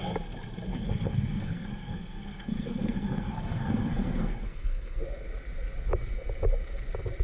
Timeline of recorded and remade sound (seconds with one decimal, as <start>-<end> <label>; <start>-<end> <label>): 0.0-0.7 recorded; 0.7-5.0 remade; 5.0-7.2 recorded